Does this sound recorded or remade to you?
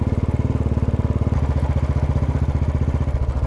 recorded